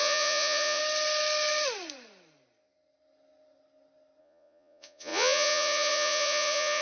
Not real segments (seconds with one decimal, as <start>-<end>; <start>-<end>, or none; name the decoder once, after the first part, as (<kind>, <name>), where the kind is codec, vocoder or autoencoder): 0.0-0.8 (vocoder, Vocos); 4.2-6.8